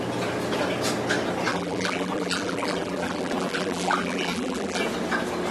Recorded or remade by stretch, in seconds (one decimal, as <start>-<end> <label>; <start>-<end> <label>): 0.0-1.5 recorded; 1.5-4.8 remade; 4.8-5.5 recorded